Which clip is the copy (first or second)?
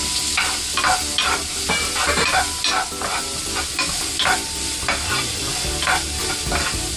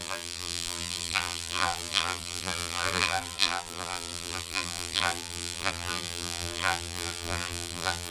second